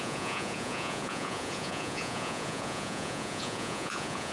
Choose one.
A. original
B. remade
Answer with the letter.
B